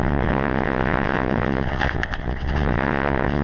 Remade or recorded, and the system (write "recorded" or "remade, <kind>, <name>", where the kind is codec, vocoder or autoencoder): remade, vocoder, WaveNeXt